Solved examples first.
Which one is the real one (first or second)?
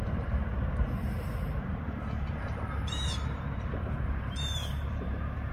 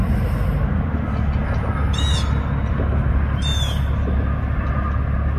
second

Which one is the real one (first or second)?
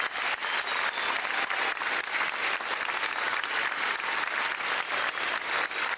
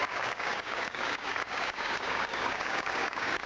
first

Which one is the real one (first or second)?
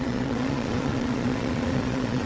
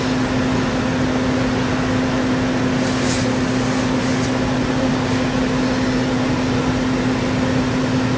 second